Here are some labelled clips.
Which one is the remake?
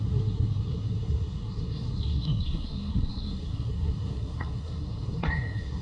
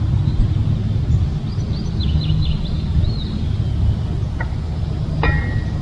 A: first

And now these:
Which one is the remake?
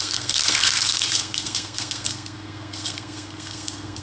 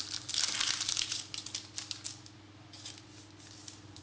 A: first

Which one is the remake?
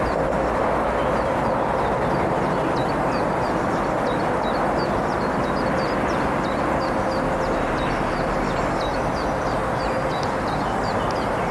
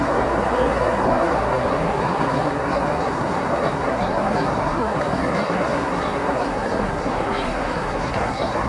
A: second